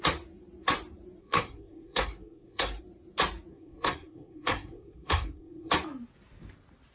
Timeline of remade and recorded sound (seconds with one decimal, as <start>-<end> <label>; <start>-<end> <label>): 0.0-1.2 recorded; 1.2-2.8 remade; 2.8-3.5 recorded; 3.5-5.7 remade; 5.7-6.9 recorded